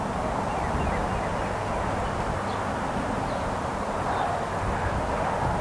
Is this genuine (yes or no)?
yes